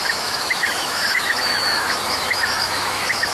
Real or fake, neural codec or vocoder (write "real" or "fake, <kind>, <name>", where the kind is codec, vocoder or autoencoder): fake, autoencoder, DAC-VAE